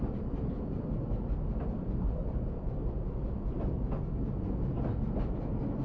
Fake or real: real